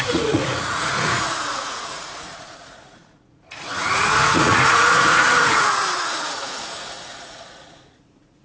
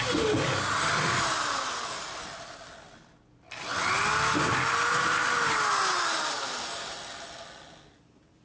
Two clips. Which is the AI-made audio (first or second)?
first